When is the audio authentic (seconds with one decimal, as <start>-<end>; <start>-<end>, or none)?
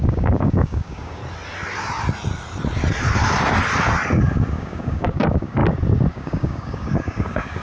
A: 1.2-4.5; 5.6-6.1